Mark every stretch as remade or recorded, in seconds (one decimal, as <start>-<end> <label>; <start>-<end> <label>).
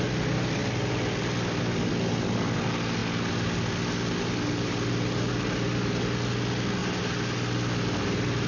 0.0-8.5 recorded